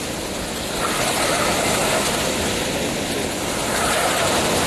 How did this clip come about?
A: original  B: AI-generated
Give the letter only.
A